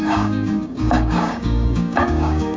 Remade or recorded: remade